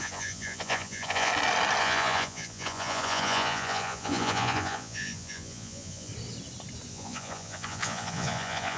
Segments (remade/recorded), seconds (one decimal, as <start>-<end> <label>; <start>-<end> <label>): 0.0-1.3 remade; 1.3-1.8 recorded; 1.8-6.1 remade; 6.1-6.9 recorded; 6.9-8.8 remade